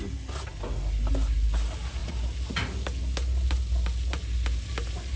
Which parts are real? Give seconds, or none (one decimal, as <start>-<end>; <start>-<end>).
0.0-5.2